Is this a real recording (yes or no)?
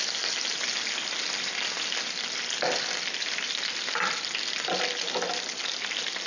yes